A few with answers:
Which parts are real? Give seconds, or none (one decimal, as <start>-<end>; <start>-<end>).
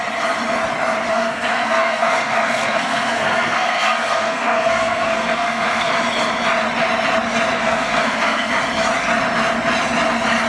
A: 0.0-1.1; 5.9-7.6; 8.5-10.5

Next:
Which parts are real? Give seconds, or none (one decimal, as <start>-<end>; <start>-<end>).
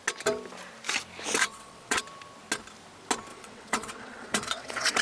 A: 0.0-1.4; 2.0-3.3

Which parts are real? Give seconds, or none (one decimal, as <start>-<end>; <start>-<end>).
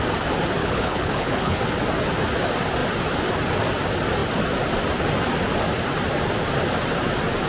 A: 0.0-0.6; 1.6-7.5